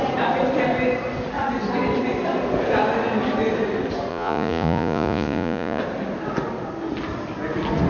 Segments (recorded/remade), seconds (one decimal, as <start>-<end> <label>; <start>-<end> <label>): 0.0-4.1 recorded; 4.1-5.8 remade; 5.8-7.9 recorded